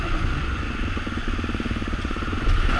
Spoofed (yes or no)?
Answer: yes